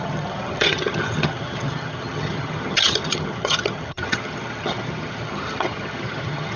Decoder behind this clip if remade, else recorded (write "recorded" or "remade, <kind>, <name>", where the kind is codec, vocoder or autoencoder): remade, vocoder, HiFi-GAN